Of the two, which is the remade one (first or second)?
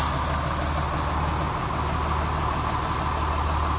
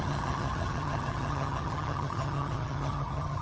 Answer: second